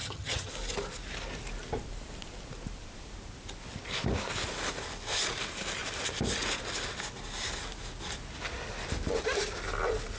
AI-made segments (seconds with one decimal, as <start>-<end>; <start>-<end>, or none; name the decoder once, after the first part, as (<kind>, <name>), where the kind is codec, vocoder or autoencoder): 0.0-0.5 (vocoder, HiFi-GAN)